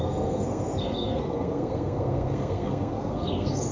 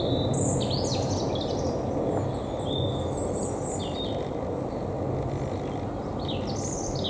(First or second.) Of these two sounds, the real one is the second